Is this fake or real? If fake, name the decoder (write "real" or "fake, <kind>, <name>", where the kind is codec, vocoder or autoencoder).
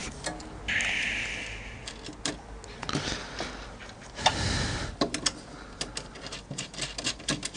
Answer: real